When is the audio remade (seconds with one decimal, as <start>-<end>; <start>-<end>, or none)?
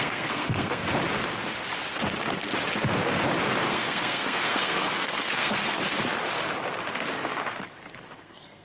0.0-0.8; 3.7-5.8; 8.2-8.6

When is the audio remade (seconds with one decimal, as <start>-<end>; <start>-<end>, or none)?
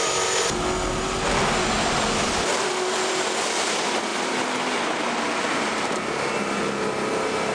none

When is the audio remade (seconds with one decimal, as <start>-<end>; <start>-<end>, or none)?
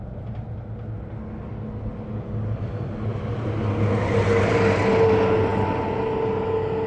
none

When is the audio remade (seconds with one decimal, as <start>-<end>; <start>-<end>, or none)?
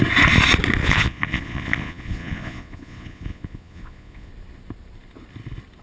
0.8-4.3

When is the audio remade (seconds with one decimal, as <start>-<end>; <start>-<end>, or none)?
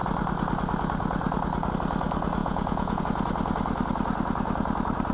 2.4-3.0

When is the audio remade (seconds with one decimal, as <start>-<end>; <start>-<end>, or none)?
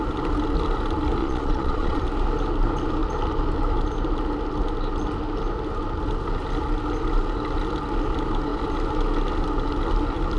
1.2-2.0